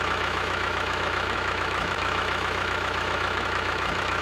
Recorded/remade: remade